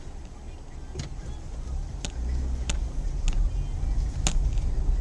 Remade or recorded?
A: recorded